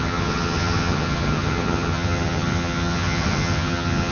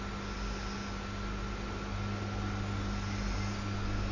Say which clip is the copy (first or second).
first